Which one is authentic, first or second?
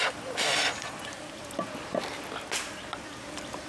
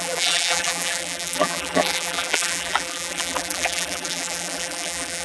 first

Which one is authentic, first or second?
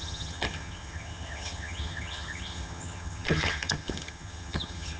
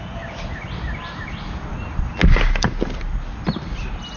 second